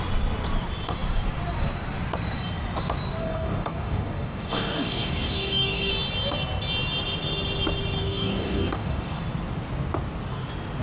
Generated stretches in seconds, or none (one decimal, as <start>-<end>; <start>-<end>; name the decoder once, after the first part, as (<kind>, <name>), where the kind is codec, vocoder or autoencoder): 3.2-5.9 (codec, DAC); 8.0-9.2